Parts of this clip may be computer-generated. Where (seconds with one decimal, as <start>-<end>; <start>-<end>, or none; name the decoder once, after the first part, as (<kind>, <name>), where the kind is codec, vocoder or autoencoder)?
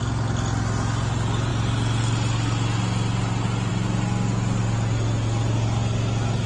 none